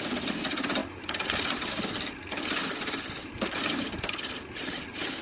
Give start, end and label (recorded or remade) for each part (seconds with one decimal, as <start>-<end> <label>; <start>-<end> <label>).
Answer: 0.0-5.2 recorded